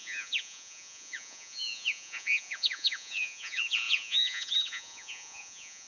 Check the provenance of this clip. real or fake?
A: fake